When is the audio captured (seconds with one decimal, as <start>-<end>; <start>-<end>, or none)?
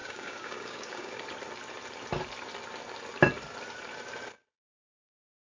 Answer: 1.2-5.4